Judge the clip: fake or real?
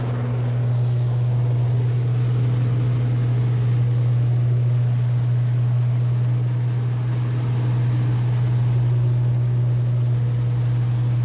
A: real